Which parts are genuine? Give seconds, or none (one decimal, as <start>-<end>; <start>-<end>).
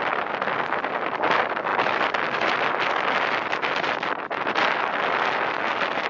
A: 0.0-6.1